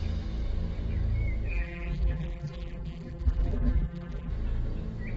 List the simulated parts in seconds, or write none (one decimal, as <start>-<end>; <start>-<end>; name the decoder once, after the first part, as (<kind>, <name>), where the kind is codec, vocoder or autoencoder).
1.5-4.3 (vocoder, BigVGAN v2)

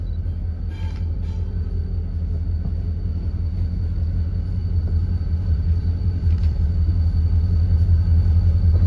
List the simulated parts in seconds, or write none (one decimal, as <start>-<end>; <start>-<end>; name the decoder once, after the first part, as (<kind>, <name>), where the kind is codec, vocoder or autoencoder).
4.6-6.9 (vocoder, BigVGAN v2)